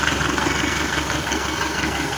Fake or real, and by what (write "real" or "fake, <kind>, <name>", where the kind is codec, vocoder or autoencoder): fake, codec, SNAC